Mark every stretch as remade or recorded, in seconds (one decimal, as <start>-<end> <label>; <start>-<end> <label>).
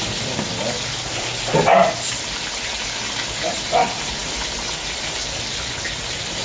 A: 0.0-6.4 recorded